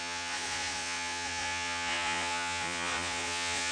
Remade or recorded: remade